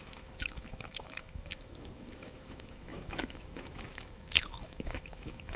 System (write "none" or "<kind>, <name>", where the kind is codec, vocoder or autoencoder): autoencoder, DAC-VAE